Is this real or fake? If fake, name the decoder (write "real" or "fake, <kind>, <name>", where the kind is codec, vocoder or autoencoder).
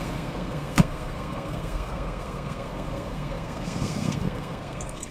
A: fake, codec, SNAC